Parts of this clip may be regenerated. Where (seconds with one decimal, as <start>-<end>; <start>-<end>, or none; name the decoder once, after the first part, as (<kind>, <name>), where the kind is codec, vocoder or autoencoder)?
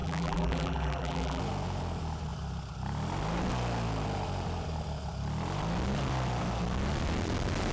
0.0-1.4 (vocoder, BigVGAN v2)